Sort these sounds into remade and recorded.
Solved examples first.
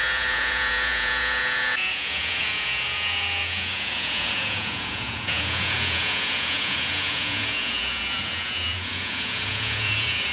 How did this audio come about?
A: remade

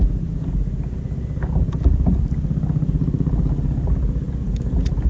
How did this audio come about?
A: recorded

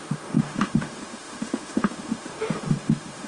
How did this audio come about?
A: remade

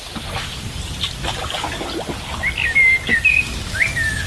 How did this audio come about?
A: recorded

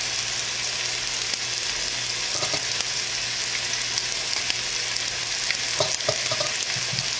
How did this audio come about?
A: recorded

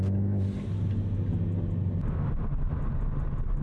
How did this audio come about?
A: recorded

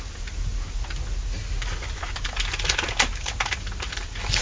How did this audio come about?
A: recorded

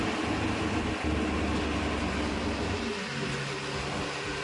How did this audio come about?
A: recorded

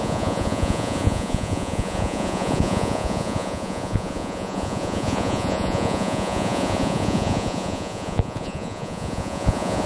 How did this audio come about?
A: remade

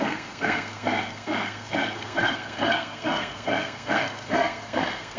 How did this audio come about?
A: remade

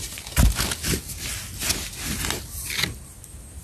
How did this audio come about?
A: recorded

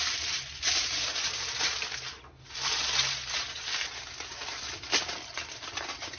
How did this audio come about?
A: recorded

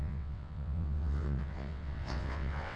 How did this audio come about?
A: remade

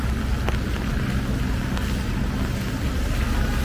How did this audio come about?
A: recorded